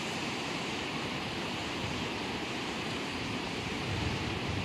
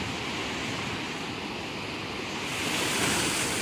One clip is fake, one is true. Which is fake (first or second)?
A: first